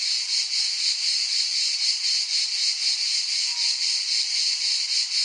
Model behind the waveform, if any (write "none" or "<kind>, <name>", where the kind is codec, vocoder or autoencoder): none